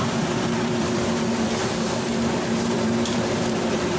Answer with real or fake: fake